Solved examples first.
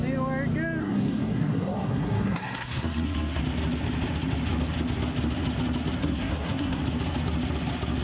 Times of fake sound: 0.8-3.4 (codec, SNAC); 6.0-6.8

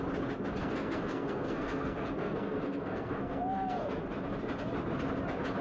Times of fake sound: 0.6-4.0 (codec, SNAC)

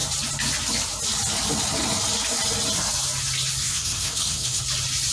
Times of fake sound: 3.6-4.6 (codec, SNAC)